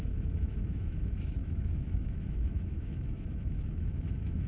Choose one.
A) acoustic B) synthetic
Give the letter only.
B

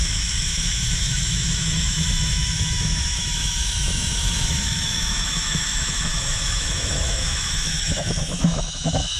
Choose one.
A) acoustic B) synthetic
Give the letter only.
B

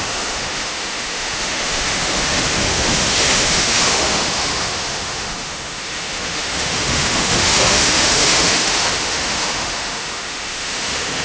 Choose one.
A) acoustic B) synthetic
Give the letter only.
B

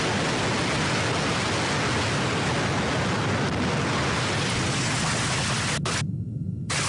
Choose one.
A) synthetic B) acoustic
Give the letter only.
B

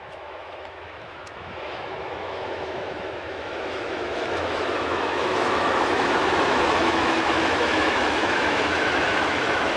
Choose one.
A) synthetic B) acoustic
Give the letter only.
A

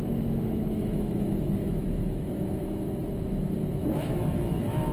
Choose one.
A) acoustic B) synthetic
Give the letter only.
B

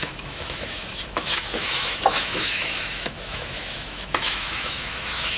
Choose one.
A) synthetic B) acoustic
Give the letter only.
A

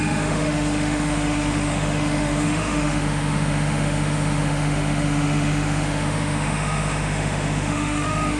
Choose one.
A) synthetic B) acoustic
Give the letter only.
A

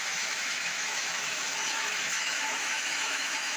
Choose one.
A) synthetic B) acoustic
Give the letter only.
A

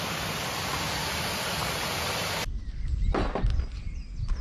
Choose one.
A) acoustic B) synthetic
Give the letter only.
A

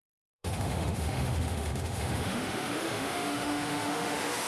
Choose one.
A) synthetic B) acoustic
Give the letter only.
A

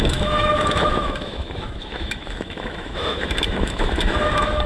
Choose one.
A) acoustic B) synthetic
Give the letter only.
B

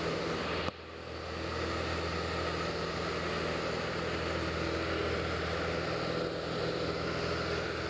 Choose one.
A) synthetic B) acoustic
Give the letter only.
B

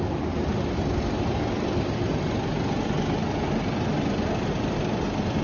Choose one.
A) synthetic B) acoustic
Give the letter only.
B